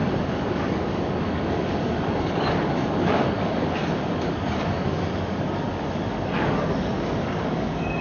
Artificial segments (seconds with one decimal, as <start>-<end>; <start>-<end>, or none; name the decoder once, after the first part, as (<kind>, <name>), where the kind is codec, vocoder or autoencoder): 0.0-8.0 (codec, DAC)